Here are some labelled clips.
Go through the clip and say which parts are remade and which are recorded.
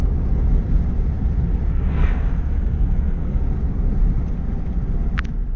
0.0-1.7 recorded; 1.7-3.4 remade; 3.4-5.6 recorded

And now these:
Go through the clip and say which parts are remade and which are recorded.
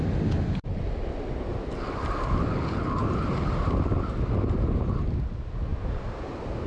0.0-3.0 recorded; 3.0-3.6 remade; 3.6-5.7 recorded; 5.7-6.7 remade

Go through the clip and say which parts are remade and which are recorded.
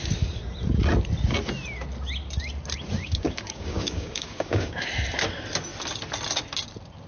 0.0-3.0 recorded; 3.0-4.9 remade; 4.9-7.1 recorded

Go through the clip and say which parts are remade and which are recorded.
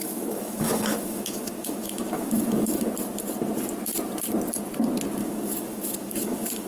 0.0-2.9 remade; 2.9-5.2 recorded; 5.2-6.7 remade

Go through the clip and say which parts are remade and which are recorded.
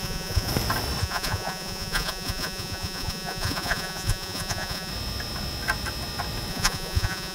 0.0-0.5 remade; 0.5-1.0 recorded; 1.0-4.9 remade; 4.9-6.5 recorded; 6.5-7.3 remade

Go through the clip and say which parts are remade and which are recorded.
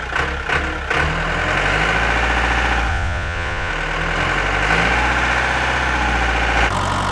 0.0-2.9 recorded; 2.9-3.7 remade; 3.7-7.1 recorded